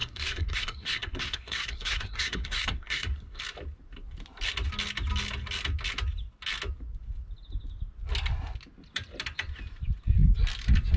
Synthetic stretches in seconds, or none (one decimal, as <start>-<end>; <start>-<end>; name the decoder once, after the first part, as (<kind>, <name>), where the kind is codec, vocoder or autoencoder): 0.0-3.4 (codec, SNAC)